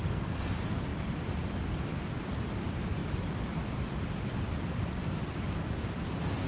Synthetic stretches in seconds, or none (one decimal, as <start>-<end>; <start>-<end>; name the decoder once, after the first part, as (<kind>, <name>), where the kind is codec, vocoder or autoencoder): 0.0-0.5 (codec, SNAC)